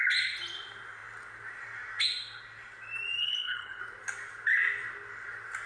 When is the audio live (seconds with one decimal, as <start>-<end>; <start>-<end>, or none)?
0.0-3.2; 3.8-5.7